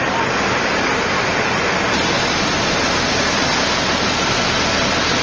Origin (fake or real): real